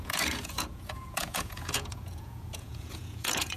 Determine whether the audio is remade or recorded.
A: remade